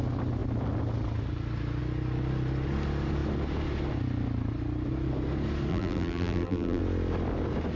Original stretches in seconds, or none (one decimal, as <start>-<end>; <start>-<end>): 0.0-5.7; 6.8-7.8